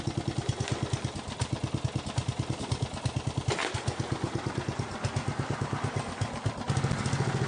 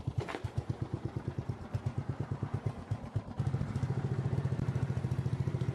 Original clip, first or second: first